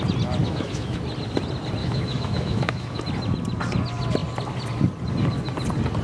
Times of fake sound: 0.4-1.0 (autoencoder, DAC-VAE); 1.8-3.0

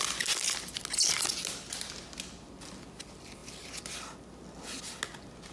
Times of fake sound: none

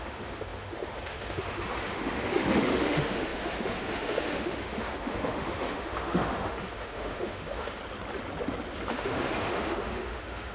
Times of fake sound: 0.0-7.8 (autoencoder, DAC-VAE); 8.9-10.5

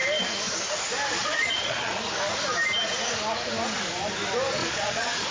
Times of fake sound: 1.1-2.0 (vocoder, Vocos); 4.6-5.3

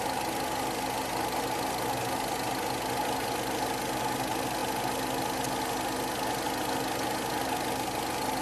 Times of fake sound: none

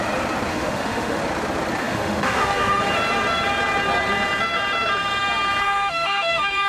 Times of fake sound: 0.5-1.2 (autoencoder, DAC-VAE); 1.8-2.8; 5.6-6.7